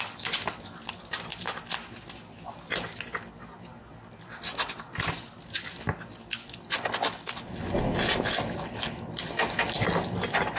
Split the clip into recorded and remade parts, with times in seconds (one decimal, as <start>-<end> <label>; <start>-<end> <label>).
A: 0.0-10.6 recorded